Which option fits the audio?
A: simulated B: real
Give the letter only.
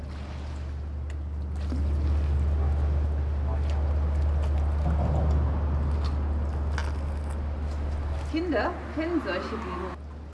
B